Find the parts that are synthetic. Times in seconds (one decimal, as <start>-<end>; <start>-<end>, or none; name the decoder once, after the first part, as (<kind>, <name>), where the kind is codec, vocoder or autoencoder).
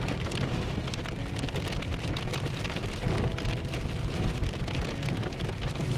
none